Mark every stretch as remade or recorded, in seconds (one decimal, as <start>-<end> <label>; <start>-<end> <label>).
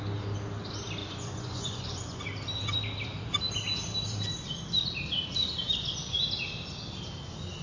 0.0-1.0 recorded; 1.0-2.2 remade; 2.2-7.6 recorded